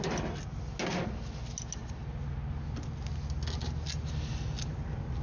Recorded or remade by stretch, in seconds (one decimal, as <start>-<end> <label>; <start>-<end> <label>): 0.0-5.2 recorded